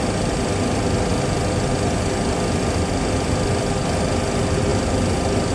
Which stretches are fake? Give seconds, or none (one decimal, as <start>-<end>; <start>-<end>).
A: none